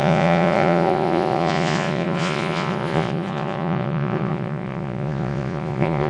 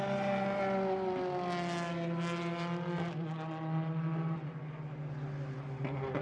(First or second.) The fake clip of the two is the first